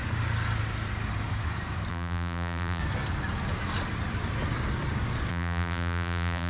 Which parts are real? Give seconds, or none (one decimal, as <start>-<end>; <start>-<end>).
0.0-1.9; 2.8-5.3